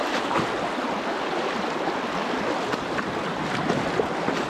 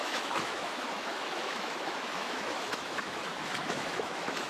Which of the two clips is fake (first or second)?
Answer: second